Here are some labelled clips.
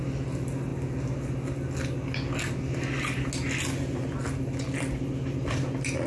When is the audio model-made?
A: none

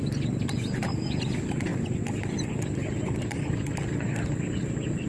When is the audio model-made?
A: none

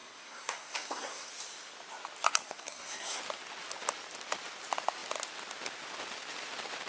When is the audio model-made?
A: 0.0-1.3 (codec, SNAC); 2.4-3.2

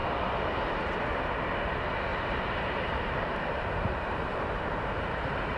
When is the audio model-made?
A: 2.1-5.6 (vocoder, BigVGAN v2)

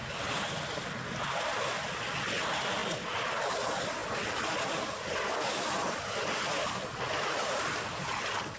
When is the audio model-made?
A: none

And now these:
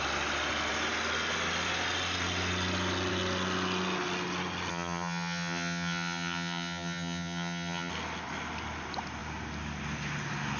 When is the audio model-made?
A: 4.7-7.9 (vocoder, HiFi-GAN)